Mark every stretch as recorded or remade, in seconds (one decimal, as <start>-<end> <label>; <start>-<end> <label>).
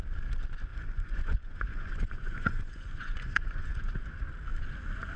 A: 0.0-0.7 recorded; 0.7-3.8 remade; 3.8-5.2 recorded